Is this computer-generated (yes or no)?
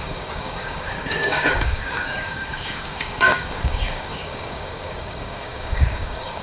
yes